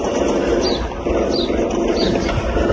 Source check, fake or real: real